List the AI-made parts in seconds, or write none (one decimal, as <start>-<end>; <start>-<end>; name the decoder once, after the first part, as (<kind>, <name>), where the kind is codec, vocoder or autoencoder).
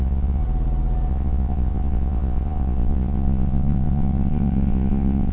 0.0-0.4 (vocoder, Vocos); 1.1-5.3